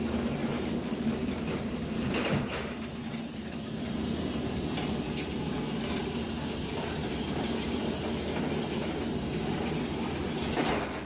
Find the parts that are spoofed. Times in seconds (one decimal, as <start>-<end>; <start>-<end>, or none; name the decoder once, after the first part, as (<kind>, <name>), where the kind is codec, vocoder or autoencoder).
0.4-1.1 (codec, DAC); 3.1-3.7